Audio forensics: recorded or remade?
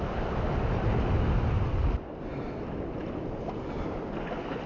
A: recorded